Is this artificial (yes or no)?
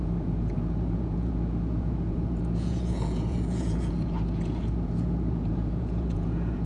yes